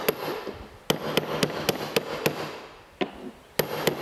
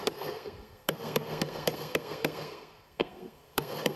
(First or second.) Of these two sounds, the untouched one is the first